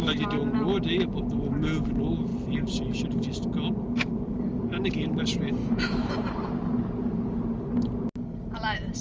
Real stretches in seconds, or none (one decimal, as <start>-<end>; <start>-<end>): 0.0-5.6; 6.1-9.0